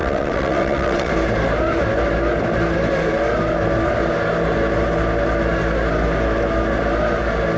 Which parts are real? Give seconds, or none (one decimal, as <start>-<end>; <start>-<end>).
1.1-7.6